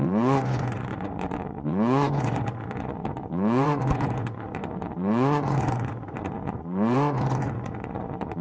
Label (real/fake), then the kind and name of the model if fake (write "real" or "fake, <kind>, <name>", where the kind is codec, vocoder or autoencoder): fake, vocoder, Vocos